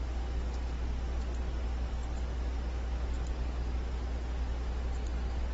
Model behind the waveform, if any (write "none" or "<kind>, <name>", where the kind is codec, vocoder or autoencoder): none